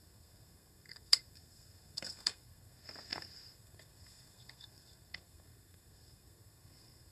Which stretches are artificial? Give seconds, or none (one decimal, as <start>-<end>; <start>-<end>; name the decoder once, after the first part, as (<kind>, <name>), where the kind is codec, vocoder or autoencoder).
0.0-7.1 (codec, SNAC)

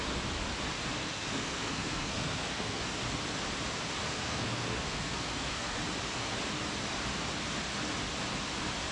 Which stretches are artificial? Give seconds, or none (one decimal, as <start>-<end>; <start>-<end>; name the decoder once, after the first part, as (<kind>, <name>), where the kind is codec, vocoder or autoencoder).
0.9-2.8 (codec, SNAC); 4.0-5.8

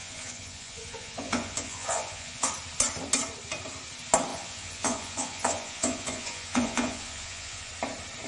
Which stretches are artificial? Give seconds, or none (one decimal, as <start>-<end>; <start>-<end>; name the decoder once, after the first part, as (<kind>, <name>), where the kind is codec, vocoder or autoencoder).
0.0-2.5 (vocoder, Vocos); 4.3-7.7